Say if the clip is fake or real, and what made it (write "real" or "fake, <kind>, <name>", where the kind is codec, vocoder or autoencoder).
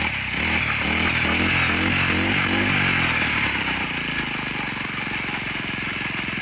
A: real